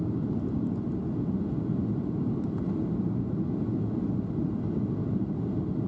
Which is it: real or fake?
real